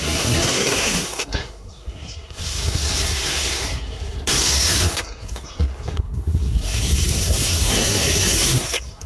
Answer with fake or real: fake